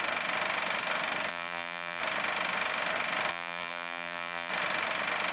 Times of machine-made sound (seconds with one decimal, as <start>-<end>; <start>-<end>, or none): 1.3-2.0; 3.3-4.5

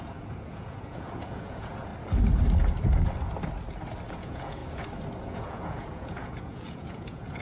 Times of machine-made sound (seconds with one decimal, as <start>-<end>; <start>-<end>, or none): 0.0-1.9; 4.1-4.6; 5.2-7.4